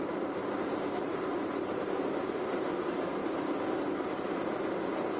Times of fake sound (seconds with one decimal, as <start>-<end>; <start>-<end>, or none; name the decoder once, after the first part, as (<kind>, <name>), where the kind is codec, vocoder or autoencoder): 0.0-1.3 (vocoder, BigVGAN v2); 2.0-3.2; 4.7-5.2